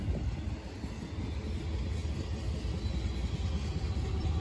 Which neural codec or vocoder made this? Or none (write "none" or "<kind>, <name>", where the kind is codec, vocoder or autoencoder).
none